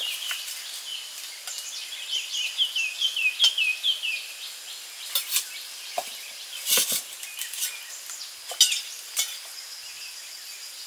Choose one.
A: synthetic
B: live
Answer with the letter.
B